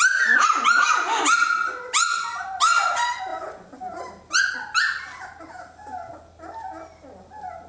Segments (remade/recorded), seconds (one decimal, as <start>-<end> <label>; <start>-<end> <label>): 0.0-7.7 recorded